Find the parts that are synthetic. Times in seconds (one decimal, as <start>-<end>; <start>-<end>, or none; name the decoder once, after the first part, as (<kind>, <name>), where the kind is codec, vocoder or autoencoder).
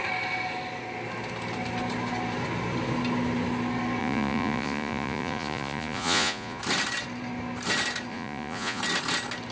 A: 4.0-6.6 (vocoder, Vocos); 8.1-8.8